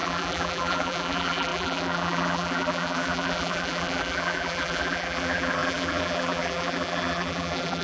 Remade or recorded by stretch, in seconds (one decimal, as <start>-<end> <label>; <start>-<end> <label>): 0.0-7.8 remade